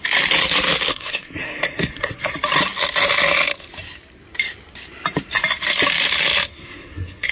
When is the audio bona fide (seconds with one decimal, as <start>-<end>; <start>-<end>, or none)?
0.0-0.9; 2.3-6.5